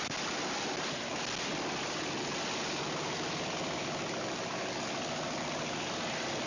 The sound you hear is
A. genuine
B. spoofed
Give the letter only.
A